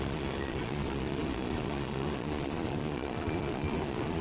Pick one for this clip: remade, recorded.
remade